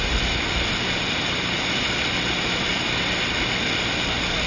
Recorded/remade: recorded